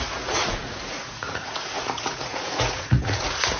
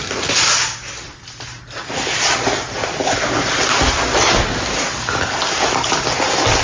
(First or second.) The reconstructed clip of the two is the first